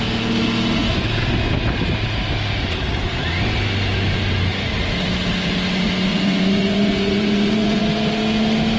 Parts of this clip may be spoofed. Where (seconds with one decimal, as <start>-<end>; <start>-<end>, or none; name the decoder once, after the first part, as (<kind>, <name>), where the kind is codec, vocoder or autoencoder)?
6.1-7.8 (vocoder, Vocos)